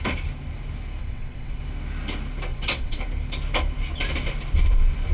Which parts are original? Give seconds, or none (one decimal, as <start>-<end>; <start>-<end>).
0.0-1.0; 1.6-2.5; 3.0-5.1